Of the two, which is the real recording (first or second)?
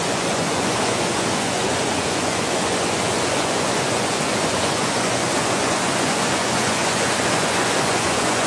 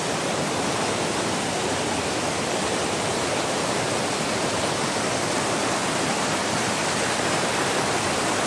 second